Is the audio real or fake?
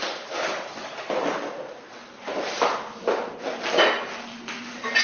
real